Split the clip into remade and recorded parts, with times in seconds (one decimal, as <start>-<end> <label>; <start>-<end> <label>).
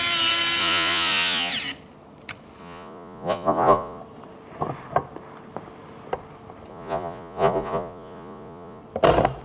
0.0-0.6 recorded; 0.6-1.5 remade; 1.5-2.6 recorded; 2.6-4.0 remade; 4.0-6.7 recorded; 6.7-8.8 remade; 8.8-9.4 recorded